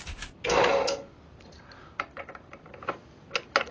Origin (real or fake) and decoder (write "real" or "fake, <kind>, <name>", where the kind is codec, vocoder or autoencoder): real